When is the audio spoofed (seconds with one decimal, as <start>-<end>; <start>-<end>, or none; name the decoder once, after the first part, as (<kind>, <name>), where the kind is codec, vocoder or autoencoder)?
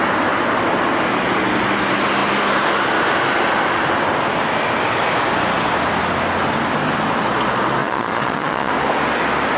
7.8-8.7 (vocoder, Vocos)